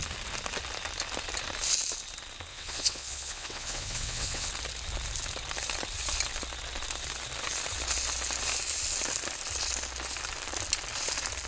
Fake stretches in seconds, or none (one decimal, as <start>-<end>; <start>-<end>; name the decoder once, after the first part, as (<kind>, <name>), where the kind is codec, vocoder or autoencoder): 2.5-4.5 (vocoder, WaveNeXt)